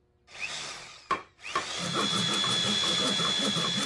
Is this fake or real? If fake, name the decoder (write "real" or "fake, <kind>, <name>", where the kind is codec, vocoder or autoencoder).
real